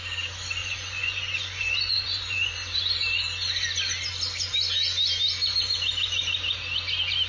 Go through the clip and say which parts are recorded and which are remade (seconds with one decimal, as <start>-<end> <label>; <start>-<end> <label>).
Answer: 0.0-0.6 recorded; 0.6-2.5 remade; 2.5-7.3 recorded